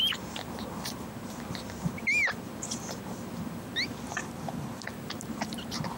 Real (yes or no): yes